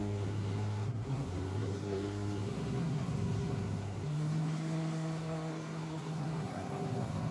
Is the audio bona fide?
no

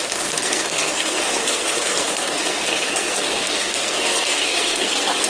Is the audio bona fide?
no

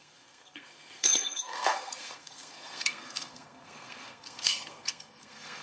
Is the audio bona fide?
no